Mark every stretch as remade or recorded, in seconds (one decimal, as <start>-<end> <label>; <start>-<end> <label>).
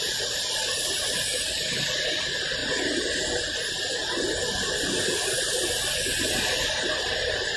0.0-7.6 remade